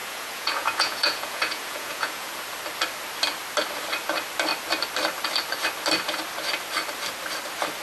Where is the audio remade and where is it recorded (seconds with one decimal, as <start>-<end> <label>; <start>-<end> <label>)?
0.0-2.3 remade; 2.3-7.8 recorded